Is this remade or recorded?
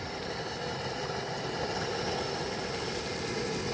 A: recorded